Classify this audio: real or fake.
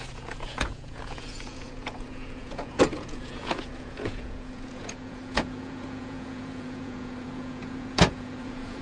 fake